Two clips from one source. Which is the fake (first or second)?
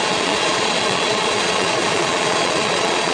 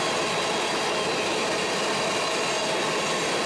first